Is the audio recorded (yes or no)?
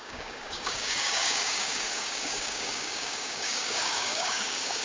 no